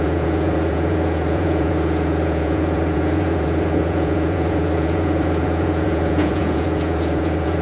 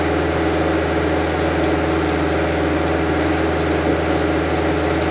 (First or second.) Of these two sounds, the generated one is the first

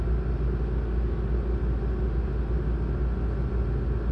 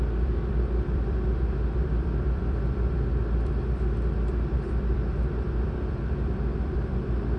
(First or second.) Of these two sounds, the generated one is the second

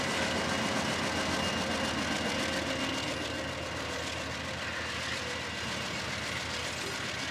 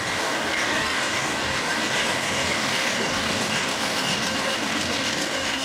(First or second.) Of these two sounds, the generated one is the second